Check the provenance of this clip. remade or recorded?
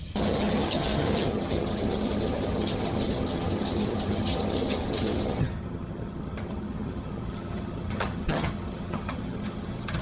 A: remade